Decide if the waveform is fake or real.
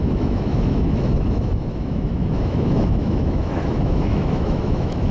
fake